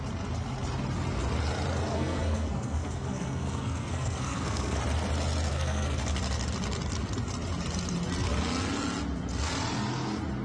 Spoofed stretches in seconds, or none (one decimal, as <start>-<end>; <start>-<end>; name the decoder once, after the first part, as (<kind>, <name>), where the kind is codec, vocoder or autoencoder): 1.9-4.8 (codec, SNAC); 5.5-6.2